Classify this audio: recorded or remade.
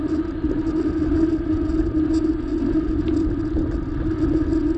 recorded